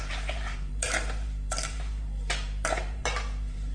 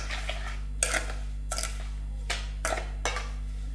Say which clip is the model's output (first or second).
first